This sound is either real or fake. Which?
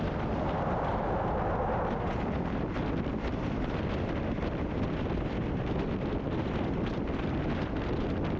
real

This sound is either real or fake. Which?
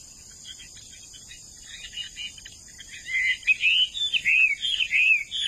real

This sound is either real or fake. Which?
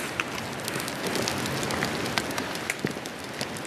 real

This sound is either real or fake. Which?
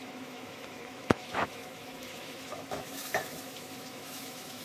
fake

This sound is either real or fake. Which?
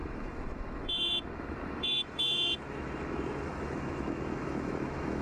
fake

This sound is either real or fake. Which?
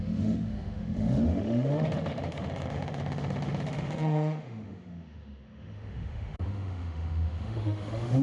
fake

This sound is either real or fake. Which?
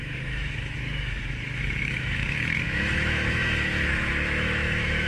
fake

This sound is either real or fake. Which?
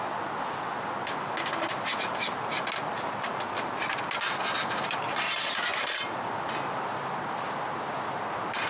real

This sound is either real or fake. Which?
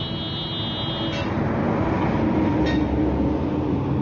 real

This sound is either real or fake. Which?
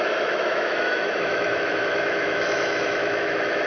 fake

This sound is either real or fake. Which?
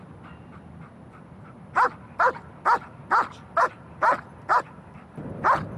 real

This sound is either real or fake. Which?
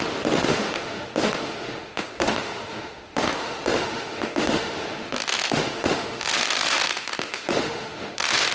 fake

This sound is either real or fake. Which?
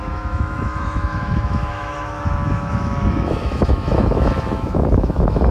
fake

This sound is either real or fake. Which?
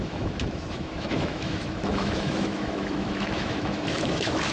fake